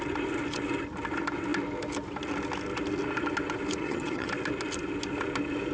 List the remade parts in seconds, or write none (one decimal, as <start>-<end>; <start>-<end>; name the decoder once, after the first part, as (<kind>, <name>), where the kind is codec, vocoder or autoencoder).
3.8-4.3 (vocoder, HiFi-GAN)